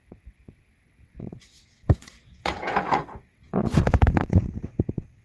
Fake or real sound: fake